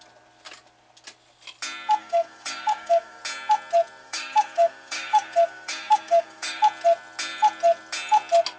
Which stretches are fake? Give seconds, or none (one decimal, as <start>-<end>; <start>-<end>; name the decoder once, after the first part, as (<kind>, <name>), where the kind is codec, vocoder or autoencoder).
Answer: 2.0-3.2 (codec, DAC); 4.0-6.6